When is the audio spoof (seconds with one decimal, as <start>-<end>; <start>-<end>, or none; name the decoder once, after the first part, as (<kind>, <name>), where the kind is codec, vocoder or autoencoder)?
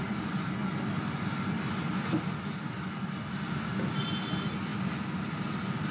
none